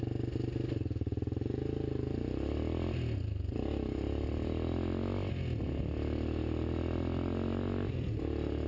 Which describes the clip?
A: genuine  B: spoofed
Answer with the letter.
A